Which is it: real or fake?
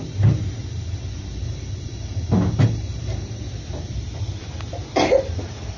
real